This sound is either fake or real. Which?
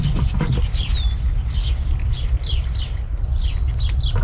real